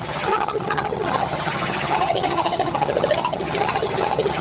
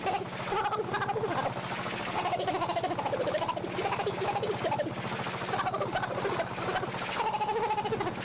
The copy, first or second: first